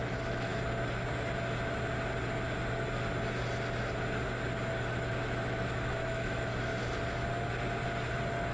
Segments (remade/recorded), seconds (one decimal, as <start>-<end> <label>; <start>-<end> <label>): 0.0-0.5 remade; 0.5-4.7 recorded; 4.7-6.7 remade; 6.7-8.5 recorded